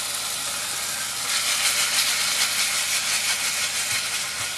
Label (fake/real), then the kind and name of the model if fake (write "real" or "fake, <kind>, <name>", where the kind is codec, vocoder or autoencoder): real